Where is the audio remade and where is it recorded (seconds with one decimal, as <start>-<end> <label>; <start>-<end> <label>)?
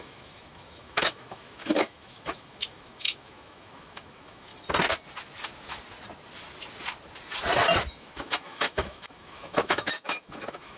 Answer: 0.0-4.5 remade; 4.5-7.9 recorded; 7.9-10.8 remade